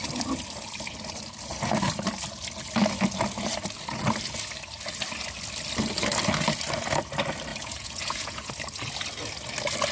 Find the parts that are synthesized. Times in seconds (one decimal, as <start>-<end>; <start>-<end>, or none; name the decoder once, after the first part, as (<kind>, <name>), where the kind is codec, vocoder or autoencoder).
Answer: 7.5-8.5 (vocoder, Vocos)